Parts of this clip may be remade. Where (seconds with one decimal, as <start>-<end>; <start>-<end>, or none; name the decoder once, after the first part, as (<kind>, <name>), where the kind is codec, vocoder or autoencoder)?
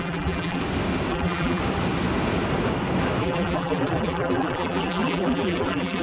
0.0-0.6 (vocoder, BigVGAN v2); 1.1-1.6; 3.2-6.0